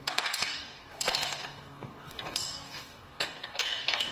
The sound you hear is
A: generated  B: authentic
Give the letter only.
A